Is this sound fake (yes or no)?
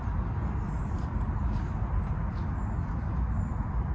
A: no